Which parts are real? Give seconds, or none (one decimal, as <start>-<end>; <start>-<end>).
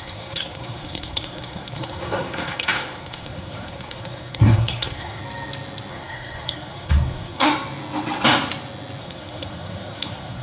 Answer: 5.2-5.9; 7.5-9.0